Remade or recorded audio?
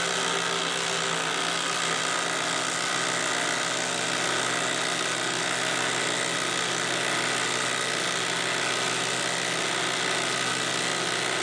recorded